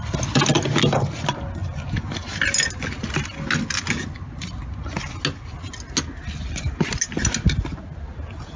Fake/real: real